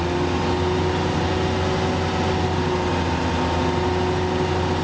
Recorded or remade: recorded